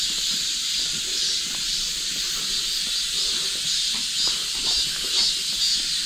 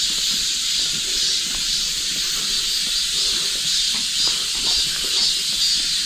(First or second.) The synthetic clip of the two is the second